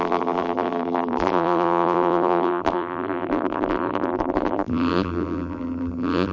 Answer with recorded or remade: remade